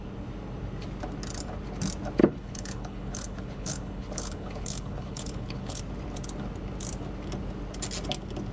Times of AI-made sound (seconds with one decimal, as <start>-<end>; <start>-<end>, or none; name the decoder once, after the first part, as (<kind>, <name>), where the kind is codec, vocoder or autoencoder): 2.2-5.8 (codec, HILCodec)